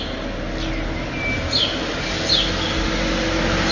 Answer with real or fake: real